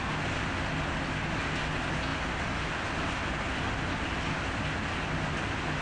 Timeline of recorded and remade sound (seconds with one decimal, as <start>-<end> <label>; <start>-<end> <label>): 0.0-5.8 recorded